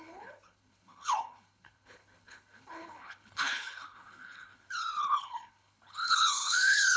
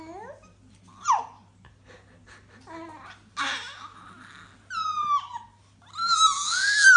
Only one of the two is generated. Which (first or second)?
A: first